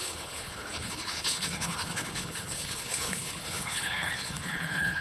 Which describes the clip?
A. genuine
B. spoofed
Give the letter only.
B